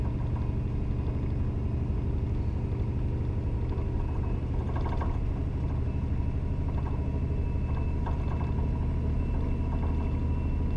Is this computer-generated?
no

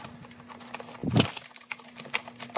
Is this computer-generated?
no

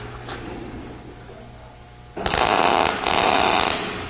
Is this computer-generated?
no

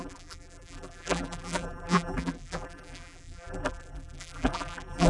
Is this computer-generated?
yes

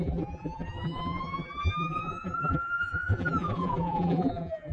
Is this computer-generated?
yes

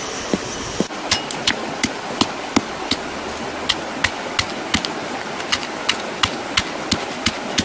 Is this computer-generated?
no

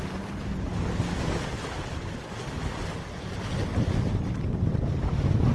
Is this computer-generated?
no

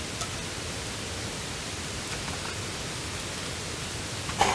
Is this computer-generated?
no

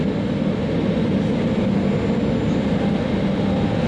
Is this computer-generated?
no